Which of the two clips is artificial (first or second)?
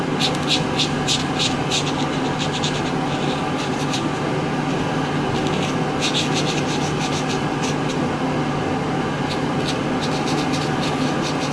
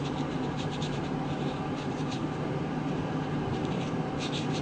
second